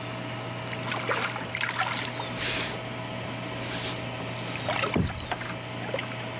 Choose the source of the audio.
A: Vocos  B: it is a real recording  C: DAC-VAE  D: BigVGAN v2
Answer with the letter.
B